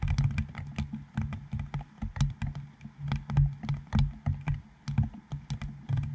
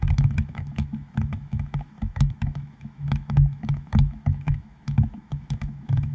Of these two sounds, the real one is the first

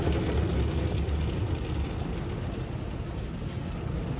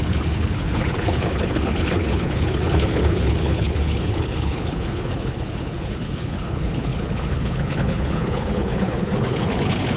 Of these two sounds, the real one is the first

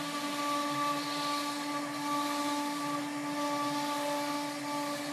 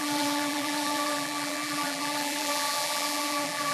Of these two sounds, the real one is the first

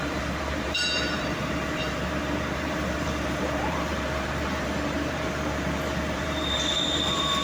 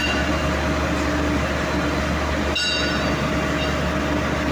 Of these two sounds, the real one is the second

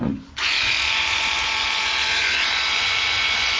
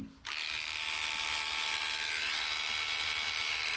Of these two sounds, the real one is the second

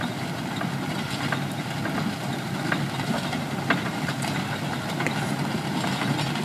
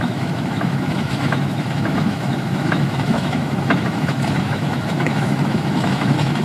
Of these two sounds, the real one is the first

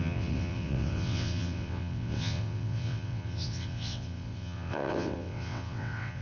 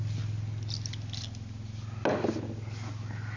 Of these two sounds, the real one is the second